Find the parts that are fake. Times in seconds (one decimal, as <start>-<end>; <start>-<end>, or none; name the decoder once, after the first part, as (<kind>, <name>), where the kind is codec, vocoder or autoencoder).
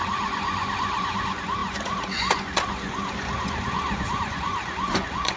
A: 0.0-5.4 (vocoder, Vocos)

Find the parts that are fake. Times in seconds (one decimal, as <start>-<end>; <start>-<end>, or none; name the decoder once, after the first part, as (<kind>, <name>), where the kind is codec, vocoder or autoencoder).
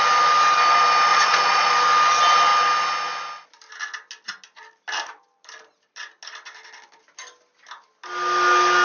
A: 1.1-1.7 (vocoder, Vocos)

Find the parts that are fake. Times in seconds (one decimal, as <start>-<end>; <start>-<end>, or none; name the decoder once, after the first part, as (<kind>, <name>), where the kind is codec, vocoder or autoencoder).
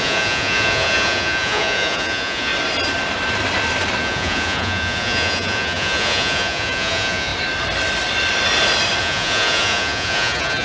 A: 0.0-2.5 (vocoder, Vocos); 4.0-7.3; 9.0-10.6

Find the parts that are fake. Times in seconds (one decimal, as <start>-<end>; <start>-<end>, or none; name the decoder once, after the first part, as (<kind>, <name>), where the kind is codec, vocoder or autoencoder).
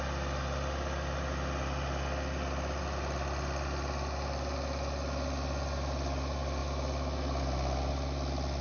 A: none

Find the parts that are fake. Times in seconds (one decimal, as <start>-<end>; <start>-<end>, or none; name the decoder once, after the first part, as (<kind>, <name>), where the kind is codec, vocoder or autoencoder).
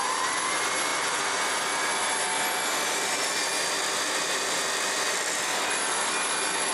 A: none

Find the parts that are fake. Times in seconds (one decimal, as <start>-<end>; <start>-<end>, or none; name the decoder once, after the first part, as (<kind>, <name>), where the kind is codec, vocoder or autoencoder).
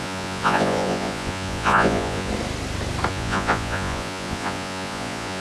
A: 0.0-2.3 (vocoder, Vocos); 3.1-5.4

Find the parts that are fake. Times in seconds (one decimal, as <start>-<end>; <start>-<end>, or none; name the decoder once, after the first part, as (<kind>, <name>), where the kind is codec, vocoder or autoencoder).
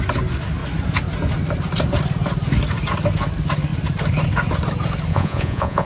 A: 5.1-5.9 (vocoder, Vocos)